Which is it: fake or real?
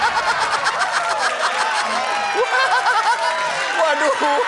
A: real